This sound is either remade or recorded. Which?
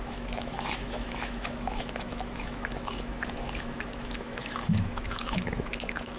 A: remade